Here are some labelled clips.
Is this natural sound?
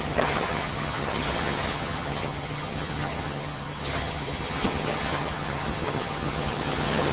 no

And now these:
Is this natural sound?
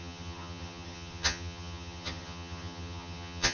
no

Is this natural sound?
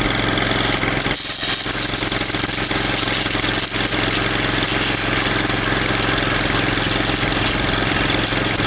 yes